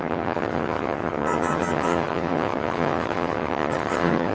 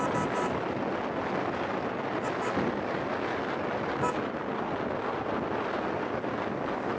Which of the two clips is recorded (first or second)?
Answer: second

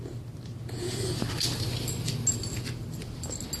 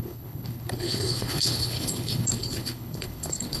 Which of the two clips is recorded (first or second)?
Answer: first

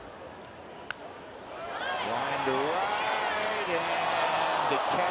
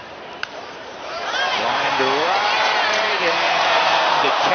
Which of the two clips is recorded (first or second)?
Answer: first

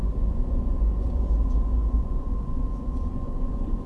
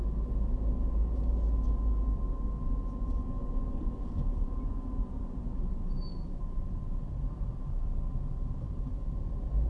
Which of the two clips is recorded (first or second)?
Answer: second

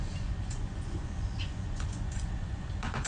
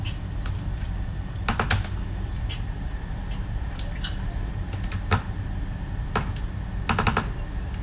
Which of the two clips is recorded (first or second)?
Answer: second